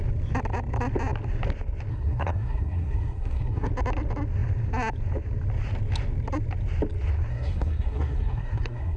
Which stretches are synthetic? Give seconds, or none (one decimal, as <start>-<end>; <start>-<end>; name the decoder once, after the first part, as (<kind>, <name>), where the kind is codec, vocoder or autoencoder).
1.9-3.7 (codec, SNAC); 7.3-9.0